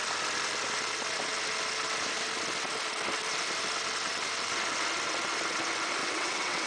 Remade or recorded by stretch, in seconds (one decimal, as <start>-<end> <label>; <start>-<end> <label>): 0.0-6.0 recorded; 6.0-6.7 remade